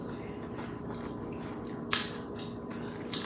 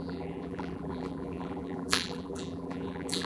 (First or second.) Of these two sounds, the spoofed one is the second